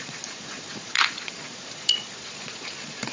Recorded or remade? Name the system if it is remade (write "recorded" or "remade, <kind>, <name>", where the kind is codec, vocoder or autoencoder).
remade, vocoder, Vocos